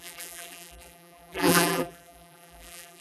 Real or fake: fake